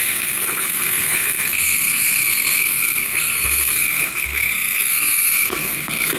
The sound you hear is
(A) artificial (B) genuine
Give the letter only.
A